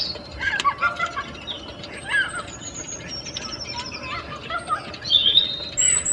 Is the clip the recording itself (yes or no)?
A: yes